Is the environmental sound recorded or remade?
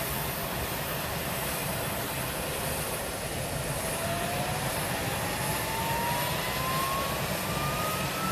recorded